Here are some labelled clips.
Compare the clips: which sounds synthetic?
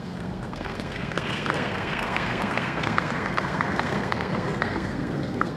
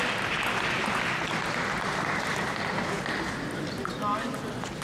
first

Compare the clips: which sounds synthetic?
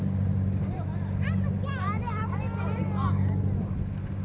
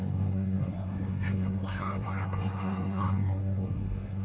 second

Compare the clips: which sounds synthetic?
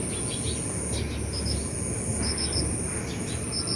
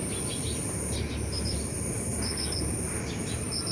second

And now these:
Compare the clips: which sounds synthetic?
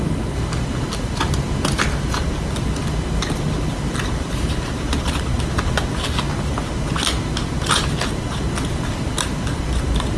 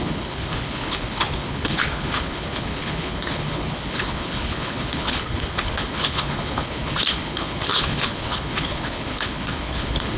second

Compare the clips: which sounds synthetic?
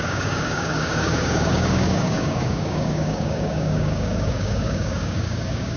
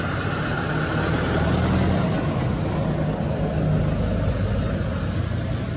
first